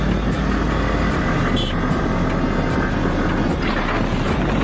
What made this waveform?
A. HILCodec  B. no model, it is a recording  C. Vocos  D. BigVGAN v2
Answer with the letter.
B